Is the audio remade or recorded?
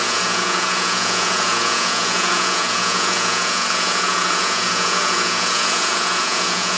remade